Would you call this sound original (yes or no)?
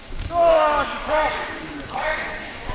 no